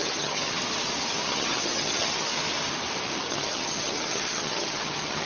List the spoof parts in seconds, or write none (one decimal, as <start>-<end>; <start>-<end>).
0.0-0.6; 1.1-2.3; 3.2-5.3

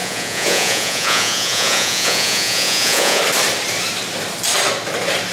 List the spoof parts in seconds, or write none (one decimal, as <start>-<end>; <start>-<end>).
0.0-3.2

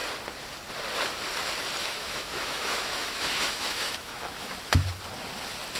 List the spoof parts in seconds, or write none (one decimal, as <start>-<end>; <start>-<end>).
1.8-4.5

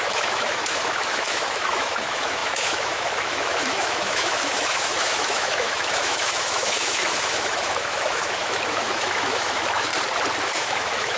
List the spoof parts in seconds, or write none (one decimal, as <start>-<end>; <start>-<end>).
0.0-9.9; 10.4-11.2